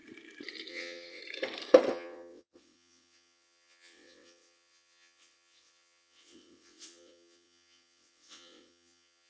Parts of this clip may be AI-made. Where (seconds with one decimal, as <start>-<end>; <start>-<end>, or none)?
0.7-1.2; 1.9-9.3